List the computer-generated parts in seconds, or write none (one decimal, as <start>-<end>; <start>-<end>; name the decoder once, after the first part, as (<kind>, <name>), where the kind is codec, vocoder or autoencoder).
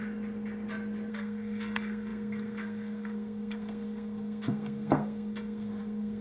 1.1-6.2 (codec, SNAC)